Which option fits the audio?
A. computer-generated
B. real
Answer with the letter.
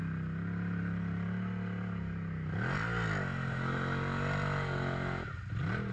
B